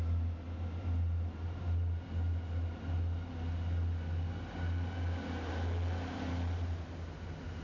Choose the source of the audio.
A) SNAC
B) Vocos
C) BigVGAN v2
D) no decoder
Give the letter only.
D